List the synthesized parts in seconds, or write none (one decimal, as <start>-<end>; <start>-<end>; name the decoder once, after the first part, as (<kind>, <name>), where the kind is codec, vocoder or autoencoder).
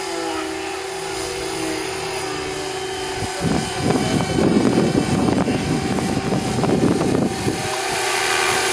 4.5-5.4 (vocoder, Vocos)